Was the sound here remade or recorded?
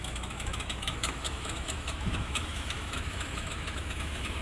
remade